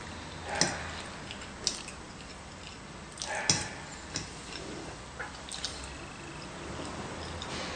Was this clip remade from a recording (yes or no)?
no